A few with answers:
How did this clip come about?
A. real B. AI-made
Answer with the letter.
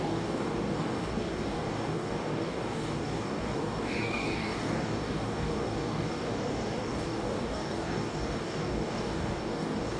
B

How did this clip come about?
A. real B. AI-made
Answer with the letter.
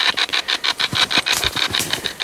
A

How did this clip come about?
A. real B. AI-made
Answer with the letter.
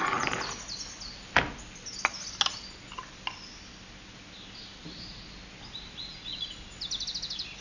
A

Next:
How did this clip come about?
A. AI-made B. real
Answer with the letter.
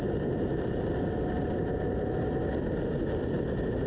B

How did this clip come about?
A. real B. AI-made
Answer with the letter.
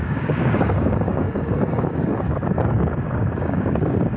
B